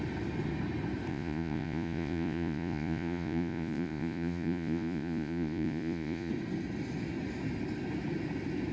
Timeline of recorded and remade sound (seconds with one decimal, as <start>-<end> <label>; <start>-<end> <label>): 0.0-1.1 recorded; 1.1-6.3 remade; 6.3-8.7 recorded

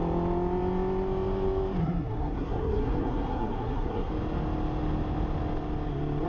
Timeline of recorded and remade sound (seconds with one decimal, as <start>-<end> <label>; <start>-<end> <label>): 0.0-1.8 recorded; 1.8-4.1 remade; 4.1-6.3 recorded